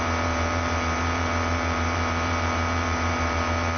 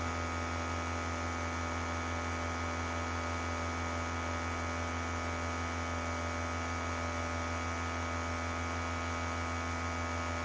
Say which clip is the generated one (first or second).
first